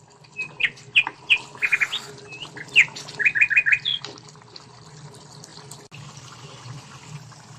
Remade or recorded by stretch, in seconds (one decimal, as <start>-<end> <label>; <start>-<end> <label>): 0.0-7.6 recorded